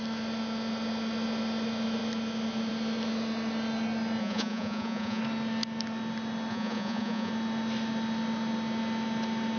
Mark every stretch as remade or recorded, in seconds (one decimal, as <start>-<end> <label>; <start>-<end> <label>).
0.0-4.2 recorded; 4.2-5.2 remade; 5.2-6.5 recorded; 6.5-7.3 remade; 7.3-9.6 recorded